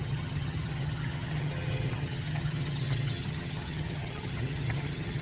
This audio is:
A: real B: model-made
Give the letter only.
B